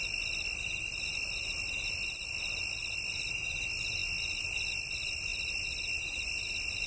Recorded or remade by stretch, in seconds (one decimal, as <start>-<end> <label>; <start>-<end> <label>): 0.0-6.9 recorded